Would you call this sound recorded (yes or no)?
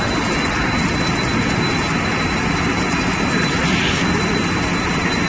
yes